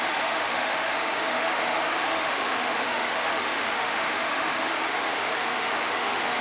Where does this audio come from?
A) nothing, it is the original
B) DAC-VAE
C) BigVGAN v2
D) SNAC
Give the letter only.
B